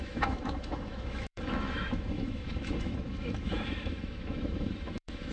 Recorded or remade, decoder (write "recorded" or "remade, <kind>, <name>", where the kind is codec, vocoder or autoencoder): remade, autoencoder, DAC-VAE